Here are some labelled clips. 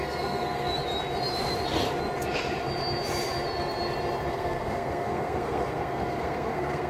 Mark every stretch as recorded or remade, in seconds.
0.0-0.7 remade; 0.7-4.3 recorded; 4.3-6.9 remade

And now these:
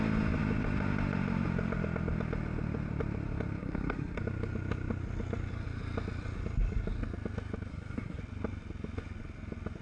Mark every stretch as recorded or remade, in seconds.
0.0-3.6 recorded; 3.6-4.2 remade; 4.2-7.7 recorded; 7.7-8.2 remade; 8.2-9.8 recorded

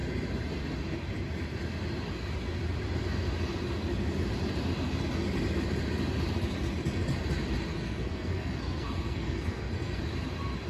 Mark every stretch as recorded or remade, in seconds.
0.0-7.7 recorded; 7.7-10.0 remade; 10.0-10.7 recorded

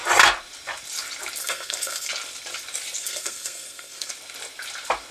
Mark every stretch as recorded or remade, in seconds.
0.0-1.4 recorded; 1.4-2.1 remade; 2.1-3.0 recorded; 3.0-4.1 remade; 4.1-5.1 recorded

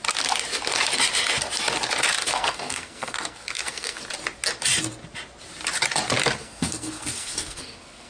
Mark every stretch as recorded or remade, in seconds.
0.0-2.2 recorded; 2.2-4.0 remade; 4.0-6.4 recorded; 6.4-8.1 remade

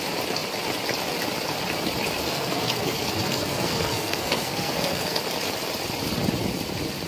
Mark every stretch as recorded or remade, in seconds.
0.0-2.2 recorded; 2.2-5.2 remade; 5.2-7.1 recorded

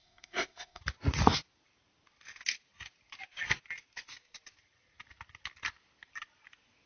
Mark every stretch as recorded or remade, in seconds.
0.0-0.8 remade; 0.8-6.9 recorded